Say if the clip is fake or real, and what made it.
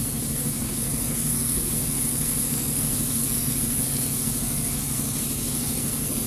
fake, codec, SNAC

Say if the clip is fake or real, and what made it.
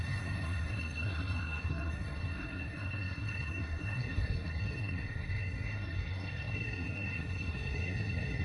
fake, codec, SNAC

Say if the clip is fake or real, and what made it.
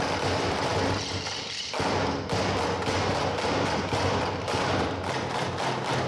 real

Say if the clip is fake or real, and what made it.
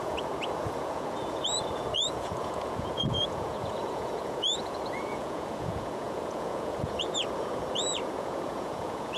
fake, vocoder, Vocos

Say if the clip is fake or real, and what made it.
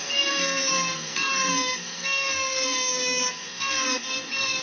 fake, codec, SNAC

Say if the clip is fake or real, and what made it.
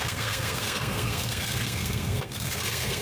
fake, codec, SNAC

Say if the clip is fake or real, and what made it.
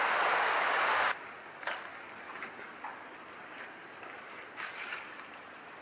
real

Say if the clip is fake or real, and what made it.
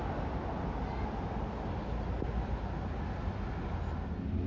real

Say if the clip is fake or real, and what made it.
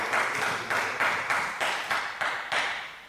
real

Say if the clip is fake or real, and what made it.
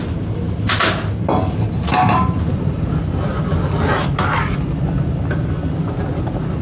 real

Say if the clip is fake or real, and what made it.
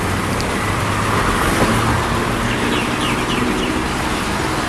real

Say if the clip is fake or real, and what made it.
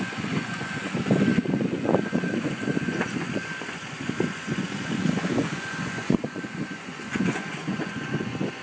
fake, vocoder, Vocos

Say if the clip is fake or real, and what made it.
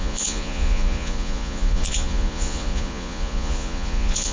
fake, vocoder, Vocos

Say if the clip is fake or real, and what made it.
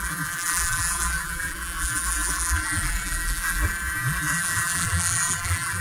fake, vocoder, BigVGAN v2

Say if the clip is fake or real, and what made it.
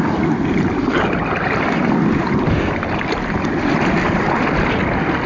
real